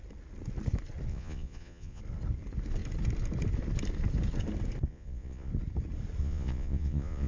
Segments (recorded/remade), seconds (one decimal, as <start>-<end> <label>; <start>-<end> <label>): 0.0-1.1 recorded; 1.1-2.0 remade; 2.0-4.9 recorded; 4.9-5.5 remade; 5.5-6.2 recorded; 6.2-7.3 remade